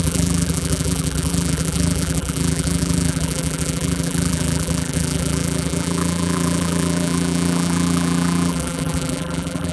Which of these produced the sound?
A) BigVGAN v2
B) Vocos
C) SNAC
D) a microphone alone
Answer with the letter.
A